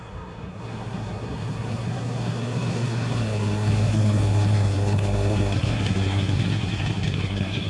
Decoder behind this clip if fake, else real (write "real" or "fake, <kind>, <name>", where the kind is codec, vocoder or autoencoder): fake, codec, SNAC